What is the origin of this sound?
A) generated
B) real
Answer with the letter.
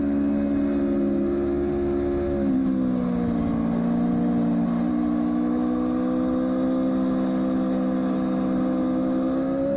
B